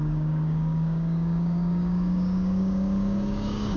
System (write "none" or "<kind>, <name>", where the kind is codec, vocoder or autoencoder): codec, DAC